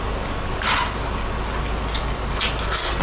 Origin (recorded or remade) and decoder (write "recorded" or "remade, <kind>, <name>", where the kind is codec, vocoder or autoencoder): recorded